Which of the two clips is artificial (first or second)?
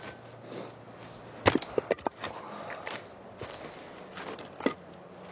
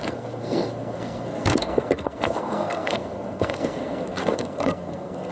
second